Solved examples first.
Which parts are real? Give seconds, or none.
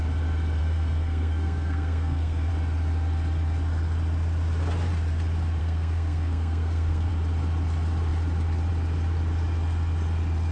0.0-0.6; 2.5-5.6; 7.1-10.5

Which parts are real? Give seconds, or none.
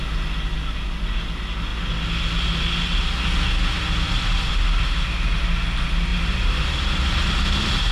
0.0-6.1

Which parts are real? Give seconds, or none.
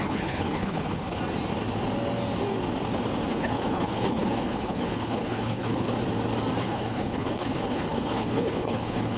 1.2-3.3; 5.9-6.6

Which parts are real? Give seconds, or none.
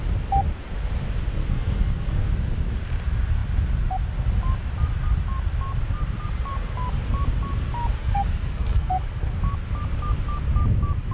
0.0-1.4; 2.3-8.0; 9.2-11.1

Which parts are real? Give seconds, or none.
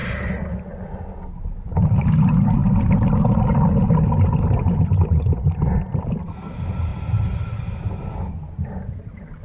0.0-6.9; 7.8-9.4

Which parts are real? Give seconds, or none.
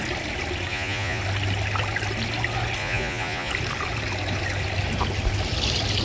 0.0-0.7; 1.2-2.8; 3.5-6.0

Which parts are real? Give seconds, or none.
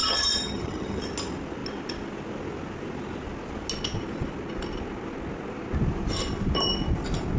1.0-7.4